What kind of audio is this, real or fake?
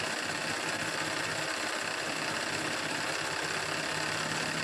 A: real